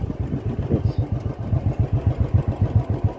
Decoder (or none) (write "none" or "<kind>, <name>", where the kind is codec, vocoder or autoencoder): none